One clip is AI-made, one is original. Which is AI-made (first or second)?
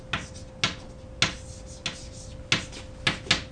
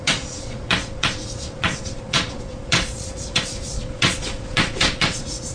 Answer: second